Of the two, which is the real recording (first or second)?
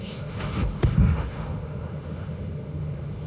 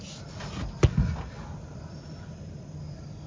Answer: second